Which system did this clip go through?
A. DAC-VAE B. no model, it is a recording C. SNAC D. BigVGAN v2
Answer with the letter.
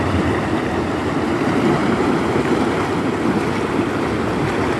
B